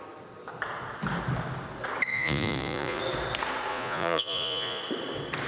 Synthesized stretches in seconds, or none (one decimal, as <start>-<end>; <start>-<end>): 2.1-3.0; 3.7-4.8